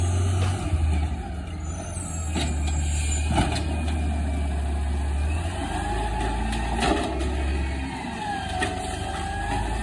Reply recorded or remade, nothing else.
recorded